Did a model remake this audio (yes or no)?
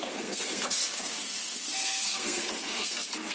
yes